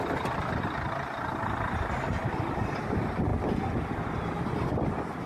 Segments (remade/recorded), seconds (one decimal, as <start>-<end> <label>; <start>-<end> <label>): 0.0-5.3 recorded